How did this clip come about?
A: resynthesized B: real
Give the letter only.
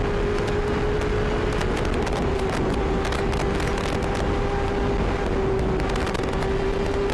B